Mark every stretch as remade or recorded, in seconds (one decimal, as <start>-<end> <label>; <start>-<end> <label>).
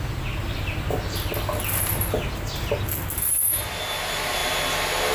0.0-5.1 recorded